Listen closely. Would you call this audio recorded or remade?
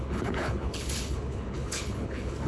remade